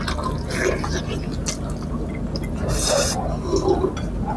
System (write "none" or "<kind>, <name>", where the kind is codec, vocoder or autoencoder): none